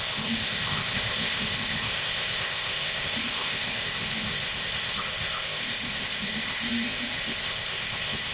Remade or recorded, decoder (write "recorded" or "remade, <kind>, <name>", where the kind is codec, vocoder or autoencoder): remade, codec, ZipCodec